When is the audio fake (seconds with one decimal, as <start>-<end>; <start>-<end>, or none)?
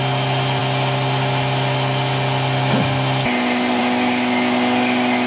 none